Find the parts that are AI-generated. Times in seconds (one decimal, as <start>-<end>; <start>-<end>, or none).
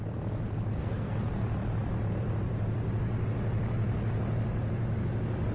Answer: 0.7-1.2